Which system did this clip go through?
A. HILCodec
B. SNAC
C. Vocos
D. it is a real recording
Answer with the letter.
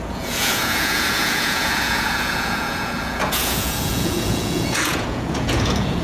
C